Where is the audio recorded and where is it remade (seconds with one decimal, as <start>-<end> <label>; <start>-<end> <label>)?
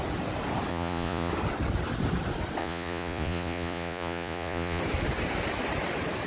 0.0-0.7 recorded; 0.7-1.3 remade; 1.3-2.6 recorded; 2.6-4.8 remade; 4.8-6.3 recorded